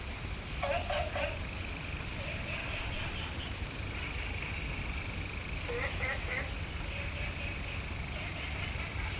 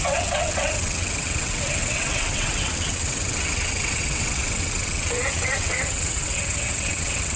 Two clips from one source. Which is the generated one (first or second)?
second